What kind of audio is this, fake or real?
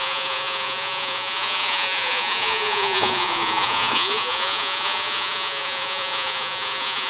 fake